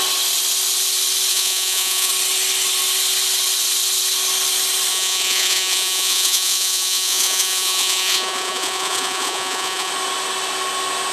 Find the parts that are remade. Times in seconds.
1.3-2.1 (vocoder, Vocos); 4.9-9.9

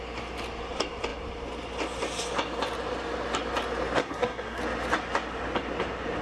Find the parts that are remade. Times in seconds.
4.0-4.6 (codec, SNAC)

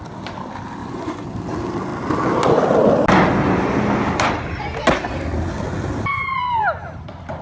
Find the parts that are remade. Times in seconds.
0.8-1.3 (vocoder, Vocos)

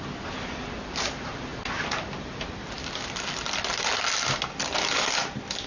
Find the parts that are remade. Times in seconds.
none

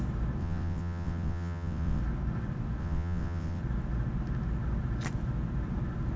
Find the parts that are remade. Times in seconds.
0.4-2.0 (vocoder, WaveNeXt); 2.8-3.6

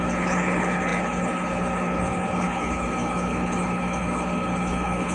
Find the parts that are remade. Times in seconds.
0.0-5.1 (codec, HILCodec)

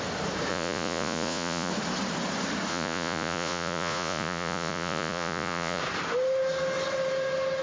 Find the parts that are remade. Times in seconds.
0.5-1.7 (vocoder, Vocos); 2.7-5.8

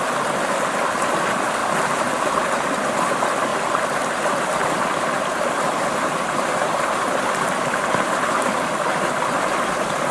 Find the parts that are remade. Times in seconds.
1.6-2.1 (vocoder, BigVGAN v2)